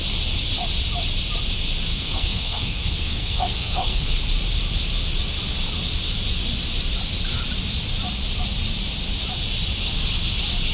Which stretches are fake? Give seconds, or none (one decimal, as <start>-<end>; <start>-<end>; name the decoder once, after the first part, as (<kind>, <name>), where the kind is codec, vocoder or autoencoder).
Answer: 1.9-4.2 (codec, SNAC)